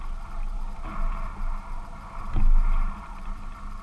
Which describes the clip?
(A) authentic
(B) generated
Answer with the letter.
A